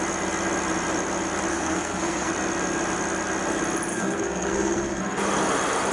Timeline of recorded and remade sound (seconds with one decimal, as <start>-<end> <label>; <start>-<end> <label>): 0.0-1.5 recorded; 1.5-2.3 remade; 2.3-3.9 recorded; 3.9-5.0 remade; 5.0-5.9 recorded